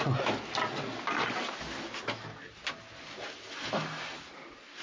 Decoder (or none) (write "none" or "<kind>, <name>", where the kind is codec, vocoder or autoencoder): none